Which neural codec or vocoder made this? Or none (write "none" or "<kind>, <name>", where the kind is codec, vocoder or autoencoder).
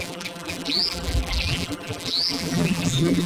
vocoder, BigVGAN v2